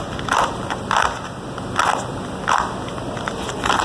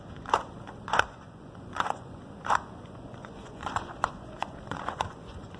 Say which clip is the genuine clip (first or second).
first